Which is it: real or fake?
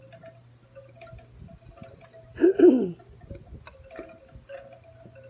real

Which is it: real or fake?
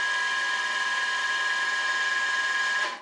real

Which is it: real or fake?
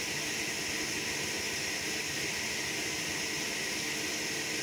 real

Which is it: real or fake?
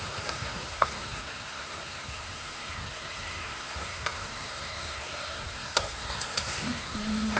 fake